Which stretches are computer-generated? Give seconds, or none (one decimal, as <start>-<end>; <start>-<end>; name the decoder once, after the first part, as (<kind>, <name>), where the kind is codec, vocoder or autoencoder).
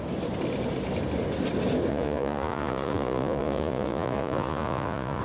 1.9-5.2 (vocoder, Vocos)